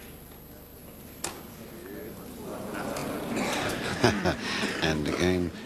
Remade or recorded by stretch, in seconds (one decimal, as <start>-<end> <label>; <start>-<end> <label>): 0.0-5.7 recorded